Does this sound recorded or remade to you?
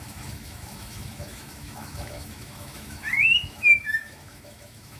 remade